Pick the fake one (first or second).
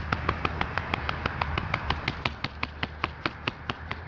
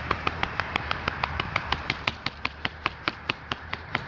second